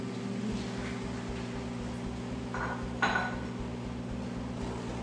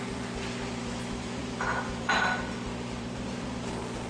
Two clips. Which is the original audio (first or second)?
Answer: first